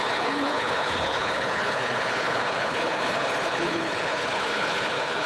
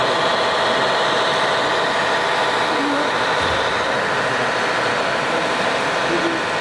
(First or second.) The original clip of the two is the second